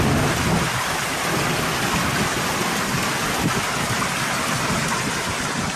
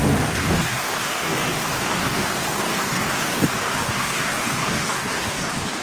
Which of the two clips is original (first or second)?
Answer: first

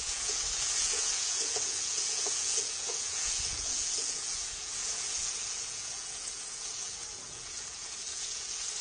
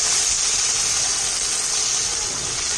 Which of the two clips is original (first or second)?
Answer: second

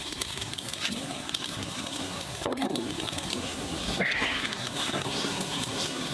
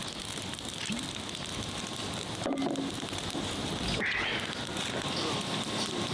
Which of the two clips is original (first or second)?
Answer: second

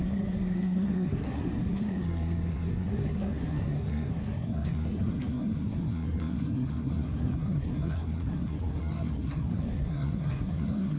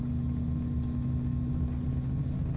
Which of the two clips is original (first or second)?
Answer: second